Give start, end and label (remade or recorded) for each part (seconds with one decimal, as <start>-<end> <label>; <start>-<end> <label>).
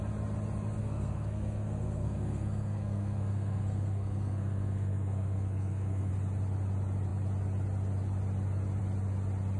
0.0-0.8 recorded; 0.8-6.1 remade; 6.1-9.6 recorded